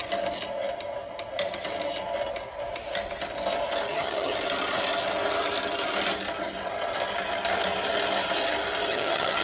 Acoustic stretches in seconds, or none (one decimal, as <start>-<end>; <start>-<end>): 0.0-3.9; 4.3-8.9